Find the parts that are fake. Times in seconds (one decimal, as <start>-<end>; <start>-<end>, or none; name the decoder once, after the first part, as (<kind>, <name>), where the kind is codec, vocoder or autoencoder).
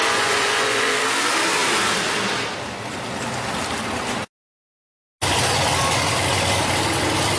0.0-0.9 (vocoder, Vocos)